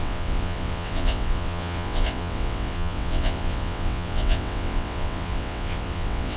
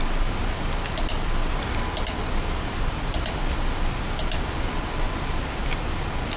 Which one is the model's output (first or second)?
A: first